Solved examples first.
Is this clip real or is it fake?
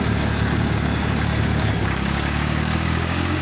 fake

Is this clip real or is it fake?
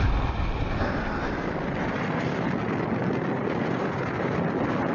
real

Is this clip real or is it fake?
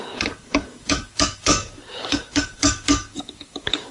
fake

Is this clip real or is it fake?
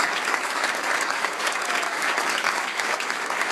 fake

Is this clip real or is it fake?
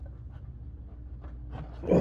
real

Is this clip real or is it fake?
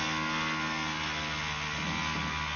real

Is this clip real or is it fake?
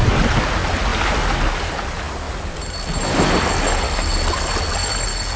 real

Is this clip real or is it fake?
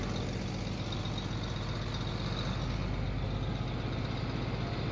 real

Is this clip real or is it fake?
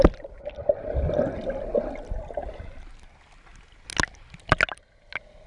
real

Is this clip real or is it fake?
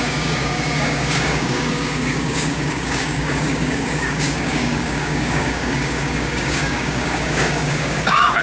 fake